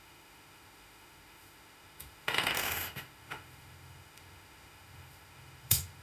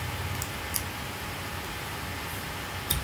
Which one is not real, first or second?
first